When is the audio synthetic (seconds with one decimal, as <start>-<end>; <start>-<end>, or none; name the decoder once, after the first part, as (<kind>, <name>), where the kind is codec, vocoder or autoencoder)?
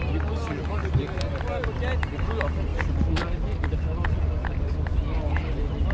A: none